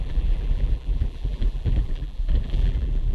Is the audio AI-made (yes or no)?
yes